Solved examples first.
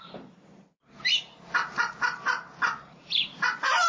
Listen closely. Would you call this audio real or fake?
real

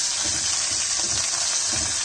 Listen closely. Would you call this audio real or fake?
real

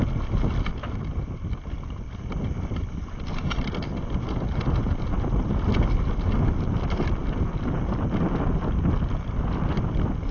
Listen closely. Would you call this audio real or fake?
real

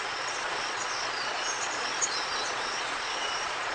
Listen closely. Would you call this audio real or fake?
fake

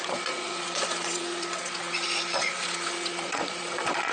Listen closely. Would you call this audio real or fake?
fake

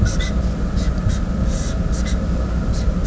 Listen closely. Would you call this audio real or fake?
real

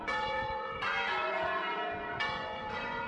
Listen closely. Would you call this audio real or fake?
fake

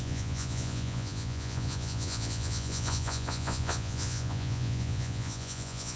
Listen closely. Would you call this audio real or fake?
fake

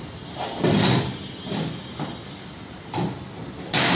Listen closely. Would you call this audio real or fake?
real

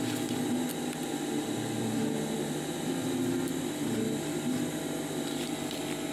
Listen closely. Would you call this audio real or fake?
real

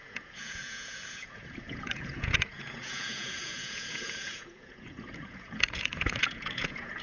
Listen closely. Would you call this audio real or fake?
fake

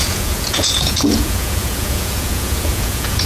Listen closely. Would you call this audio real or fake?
fake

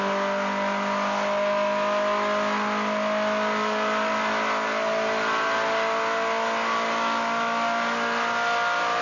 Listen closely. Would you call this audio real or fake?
real